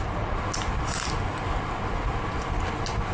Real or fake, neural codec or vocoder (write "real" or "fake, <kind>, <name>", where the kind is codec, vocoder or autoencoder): real